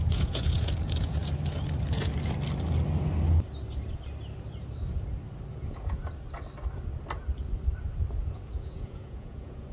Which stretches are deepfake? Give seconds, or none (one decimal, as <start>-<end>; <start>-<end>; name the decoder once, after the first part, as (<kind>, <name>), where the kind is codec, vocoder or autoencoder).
0.0-1.2 (vocoder, Vocos); 5.5-6.0; 8.2-9.7